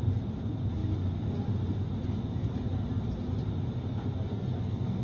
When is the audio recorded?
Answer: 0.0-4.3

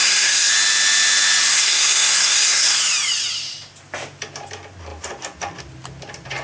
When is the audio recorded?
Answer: 0.5-1.5; 2.8-6.4